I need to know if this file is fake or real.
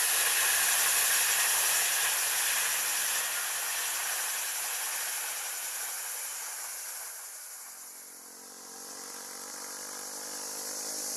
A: real